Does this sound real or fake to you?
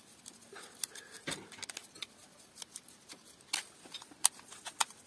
real